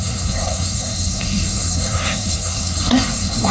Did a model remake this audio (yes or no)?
yes